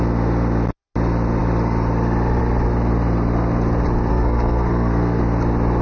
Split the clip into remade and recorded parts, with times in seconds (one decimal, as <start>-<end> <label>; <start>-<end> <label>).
0.0-4.1 recorded; 4.1-5.2 remade; 5.2-5.8 recorded